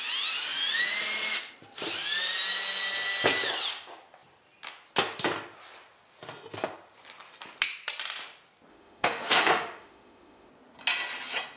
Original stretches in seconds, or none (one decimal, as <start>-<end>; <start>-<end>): 0.0-8.7; 10.5-11.6